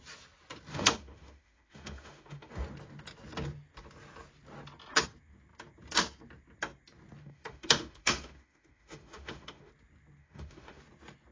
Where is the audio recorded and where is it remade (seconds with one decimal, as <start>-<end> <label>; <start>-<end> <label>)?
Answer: 0.0-0.7 recorded; 0.7-2.5 remade; 2.5-7.2 recorded; 7.2-9.7 remade; 9.7-10.2 recorded; 10.2-10.8 remade; 10.8-11.3 recorded

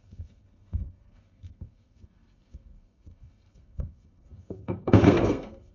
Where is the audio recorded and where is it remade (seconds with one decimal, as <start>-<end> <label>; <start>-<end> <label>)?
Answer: 0.0-5.7 remade

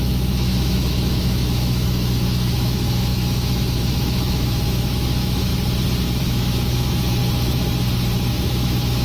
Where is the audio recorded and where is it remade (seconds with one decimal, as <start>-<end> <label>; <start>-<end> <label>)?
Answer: 0.0-5.5 remade; 5.5-6.2 recorded; 6.2-7.2 remade; 7.2-8.3 recorded; 8.3-9.0 remade

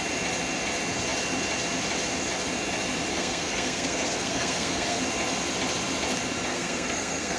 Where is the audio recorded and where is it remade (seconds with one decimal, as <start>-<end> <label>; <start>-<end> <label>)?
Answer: 0.0-3.1 recorded; 3.1-5.0 remade; 5.0-6.5 recorded; 6.5-7.4 remade

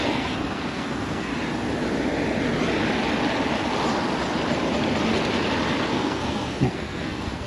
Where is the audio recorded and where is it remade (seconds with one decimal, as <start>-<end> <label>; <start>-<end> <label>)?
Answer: 0.0-1.3 remade; 1.3-5.8 recorded; 5.8-7.5 remade

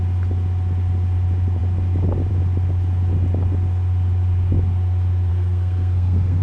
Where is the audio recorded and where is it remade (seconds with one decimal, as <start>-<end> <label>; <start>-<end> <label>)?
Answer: 0.0-5.3 recorded; 5.3-6.4 remade

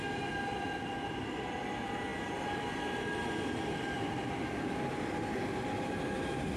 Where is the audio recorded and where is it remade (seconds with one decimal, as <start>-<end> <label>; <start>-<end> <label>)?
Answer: 0.0-6.6 recorded